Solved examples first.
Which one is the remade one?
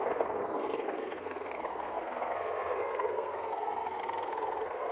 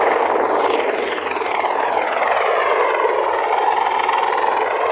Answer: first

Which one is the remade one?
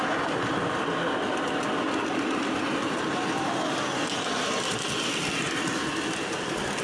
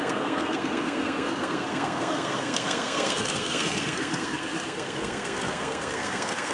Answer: second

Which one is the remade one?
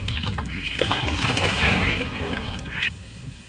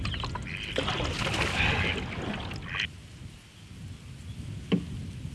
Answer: first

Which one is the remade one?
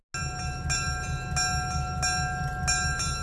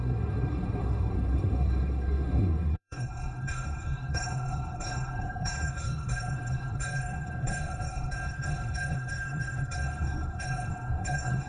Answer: second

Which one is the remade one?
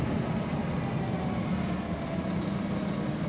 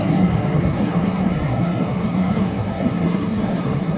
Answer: second